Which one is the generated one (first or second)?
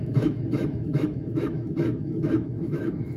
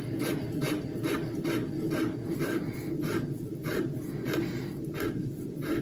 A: first